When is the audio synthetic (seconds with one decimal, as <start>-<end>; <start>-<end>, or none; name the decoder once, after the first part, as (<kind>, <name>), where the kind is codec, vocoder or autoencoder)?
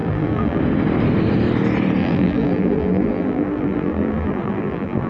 0.0-0.6 (vocoder, BigVGAN v2); 2.0-5.1